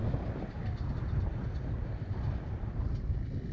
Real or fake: real